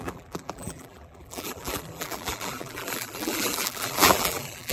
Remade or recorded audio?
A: remade